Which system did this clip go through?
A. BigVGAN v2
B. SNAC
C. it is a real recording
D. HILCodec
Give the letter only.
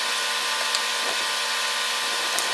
C